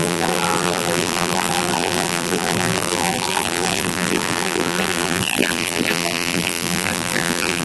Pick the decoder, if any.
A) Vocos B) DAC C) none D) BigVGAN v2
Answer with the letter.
D